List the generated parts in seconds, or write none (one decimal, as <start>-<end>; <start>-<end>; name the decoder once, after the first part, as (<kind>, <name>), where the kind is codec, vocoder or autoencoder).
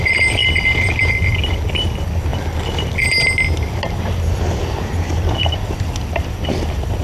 none